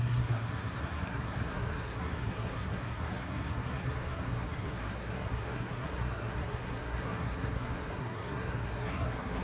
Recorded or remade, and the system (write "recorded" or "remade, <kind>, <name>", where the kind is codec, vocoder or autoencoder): remade, codec, SNAC